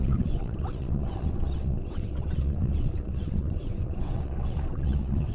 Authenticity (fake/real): fake